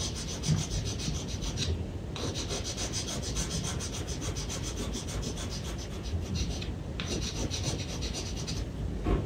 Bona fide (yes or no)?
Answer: yes